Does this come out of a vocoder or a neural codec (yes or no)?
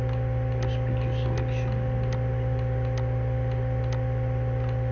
no